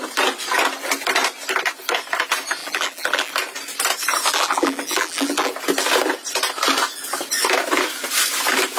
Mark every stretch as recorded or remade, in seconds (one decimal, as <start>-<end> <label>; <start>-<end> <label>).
0.0-2.6 recorded; 2.6-3.3 remade; 3.3-4.3 recorded; 4.3-5.5 remade; 5.5-8.8 recorded